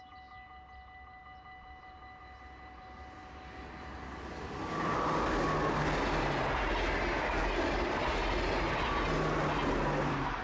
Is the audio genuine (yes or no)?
yes